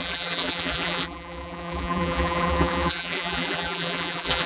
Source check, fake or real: fake